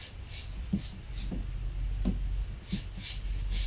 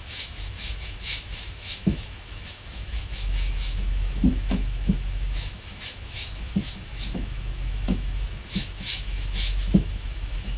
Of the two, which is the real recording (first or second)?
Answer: first